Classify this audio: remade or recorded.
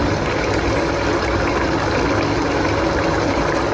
recorded